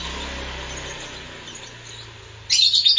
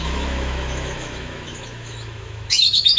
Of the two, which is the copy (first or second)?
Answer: second